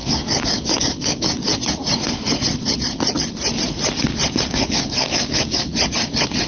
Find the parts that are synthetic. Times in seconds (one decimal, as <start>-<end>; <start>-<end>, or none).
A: 0.0-1.5; 4.5-5.7